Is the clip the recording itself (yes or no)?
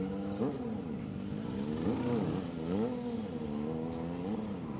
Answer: yes